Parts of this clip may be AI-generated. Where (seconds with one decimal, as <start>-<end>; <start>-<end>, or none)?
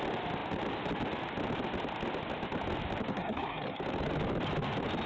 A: 3.1-3.8